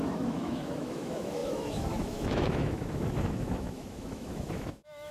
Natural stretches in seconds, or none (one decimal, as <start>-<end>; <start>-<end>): none